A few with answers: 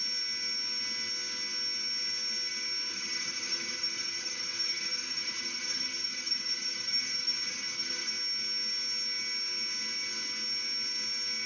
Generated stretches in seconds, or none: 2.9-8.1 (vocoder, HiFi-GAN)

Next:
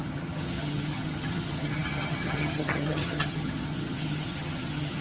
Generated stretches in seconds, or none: 0.0-5.0 (vocoder, HiFi-GAN)